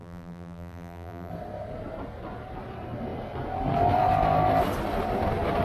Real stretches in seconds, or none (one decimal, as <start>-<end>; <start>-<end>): 1.3-5.6